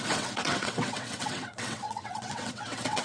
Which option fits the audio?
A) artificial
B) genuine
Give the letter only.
A